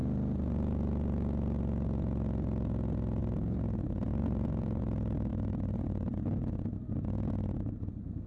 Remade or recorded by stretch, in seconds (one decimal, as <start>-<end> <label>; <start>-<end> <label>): 0.0-4.1 recorded; 4.1-4.8 remade; 4.8-5.3 recorded; 5.3-6.2 remade; 6.2-8.3 recorded